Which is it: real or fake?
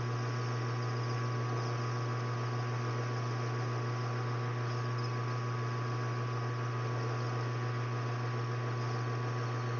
real